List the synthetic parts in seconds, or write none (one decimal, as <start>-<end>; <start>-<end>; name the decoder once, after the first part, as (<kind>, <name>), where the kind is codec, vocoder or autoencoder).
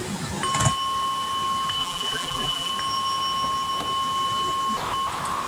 1.8-2.7 (vocoder, BigVGAN v2)